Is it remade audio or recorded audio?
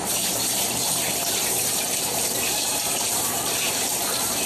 remade